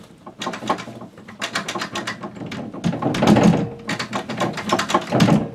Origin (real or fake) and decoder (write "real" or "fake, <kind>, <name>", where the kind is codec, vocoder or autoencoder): real